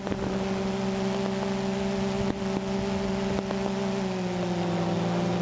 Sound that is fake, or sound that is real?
real